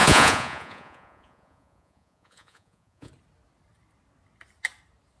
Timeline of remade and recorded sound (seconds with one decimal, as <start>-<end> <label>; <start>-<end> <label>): 0.0-3.1 remade; 3.1-5.2 recorded